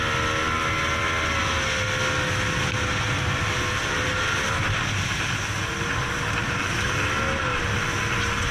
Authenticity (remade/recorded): recorded